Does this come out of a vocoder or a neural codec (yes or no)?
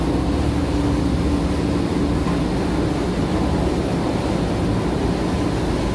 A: no